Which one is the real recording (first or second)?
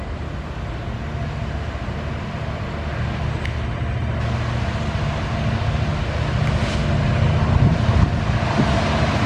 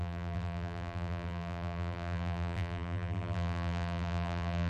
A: first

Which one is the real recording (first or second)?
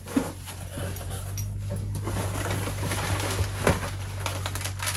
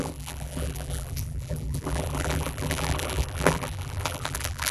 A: first